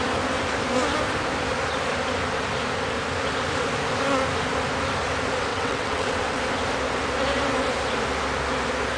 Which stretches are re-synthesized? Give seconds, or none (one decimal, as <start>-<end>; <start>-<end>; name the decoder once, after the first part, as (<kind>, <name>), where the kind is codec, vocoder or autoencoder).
5.5-6.4 (vocoder, WaveNeXt)

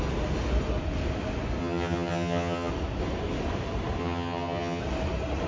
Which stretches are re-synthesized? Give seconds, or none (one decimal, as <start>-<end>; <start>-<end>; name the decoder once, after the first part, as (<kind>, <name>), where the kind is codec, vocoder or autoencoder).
1.6-2.7 (vocoder, HiFi-GAN); 4.0-4.8